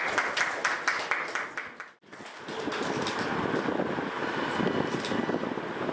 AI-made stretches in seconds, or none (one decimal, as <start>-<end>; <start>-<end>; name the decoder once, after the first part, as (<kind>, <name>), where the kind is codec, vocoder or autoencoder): none